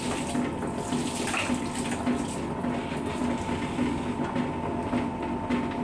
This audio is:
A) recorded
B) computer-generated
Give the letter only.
A